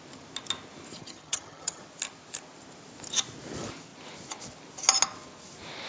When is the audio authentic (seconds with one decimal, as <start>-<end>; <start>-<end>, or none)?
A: 0.0-1.0; 1.8-5.9